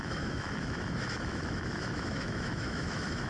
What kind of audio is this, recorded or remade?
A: remade